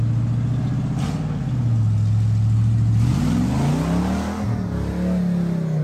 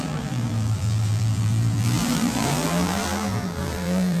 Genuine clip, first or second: first